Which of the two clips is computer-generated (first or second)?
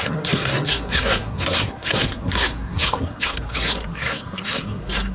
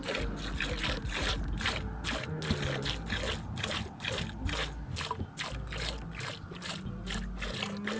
first